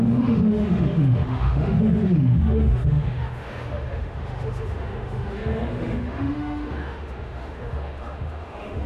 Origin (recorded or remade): remade